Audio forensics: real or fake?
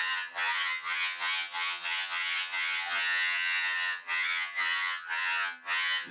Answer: fake